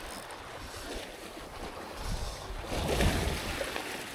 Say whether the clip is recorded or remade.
recorded